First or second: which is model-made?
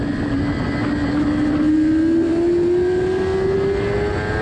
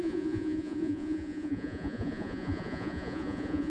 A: second